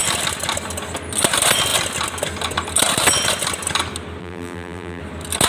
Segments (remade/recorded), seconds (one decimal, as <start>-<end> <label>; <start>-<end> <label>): 0.0-4.2 recorded; 4.2-5.0 remade; 5.0-5.5 recorded